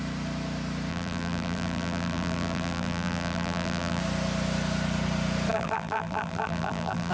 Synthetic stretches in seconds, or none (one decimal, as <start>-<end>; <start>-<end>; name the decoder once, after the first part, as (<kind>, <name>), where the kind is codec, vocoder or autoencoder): 0.9-4.0 (vocoder, BigVGAN v2); 5.5-7.1